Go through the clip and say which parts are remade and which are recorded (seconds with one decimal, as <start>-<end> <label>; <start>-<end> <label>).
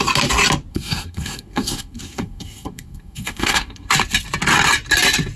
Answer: 0.0-0.7 recorded; 0.7-3.9 remade; 3.9-5.4 recorded